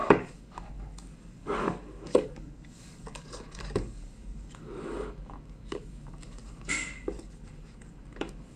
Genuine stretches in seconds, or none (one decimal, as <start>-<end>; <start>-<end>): none